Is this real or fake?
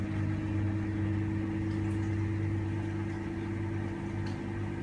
real